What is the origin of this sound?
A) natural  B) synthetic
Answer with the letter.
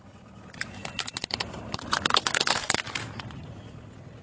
A